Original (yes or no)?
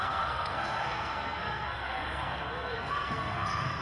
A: no